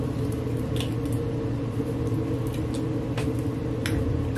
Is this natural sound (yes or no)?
yes